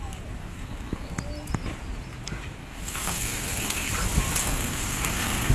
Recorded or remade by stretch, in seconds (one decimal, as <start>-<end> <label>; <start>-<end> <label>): 0.0-0.4 recorded; 0.4-1.1 remade; 1.1-2.6 recorded; 2.6-3.9 remade; 3.9-4.4 recorded; 4.4-5.5 remade